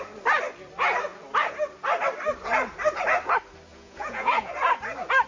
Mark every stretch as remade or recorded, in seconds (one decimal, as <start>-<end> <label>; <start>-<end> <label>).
0.0-3.7 recorded; 3.7-4.5 remade; 4.5-5.3 recorded